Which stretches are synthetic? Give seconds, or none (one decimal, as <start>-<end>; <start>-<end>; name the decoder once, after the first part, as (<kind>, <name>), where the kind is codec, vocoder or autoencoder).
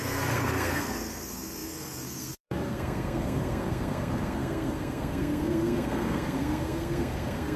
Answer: 0.0-7.6 (codec, SNAC)